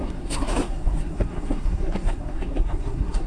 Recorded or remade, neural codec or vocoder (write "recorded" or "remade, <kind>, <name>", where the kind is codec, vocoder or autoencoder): remade, codec, SNAC